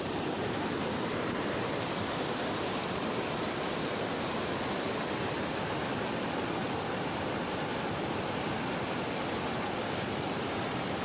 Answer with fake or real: fake